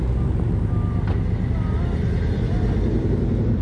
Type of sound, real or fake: real